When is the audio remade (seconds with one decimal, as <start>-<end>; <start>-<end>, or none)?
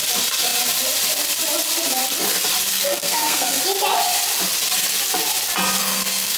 2.7-3.6; 5.8-6.4